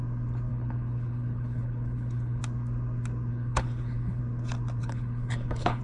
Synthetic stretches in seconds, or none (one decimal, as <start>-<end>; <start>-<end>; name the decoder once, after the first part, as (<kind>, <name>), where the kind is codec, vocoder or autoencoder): 0.5-2.4 (codec, HILCodec); 3.3-4.2; 4.8-5.8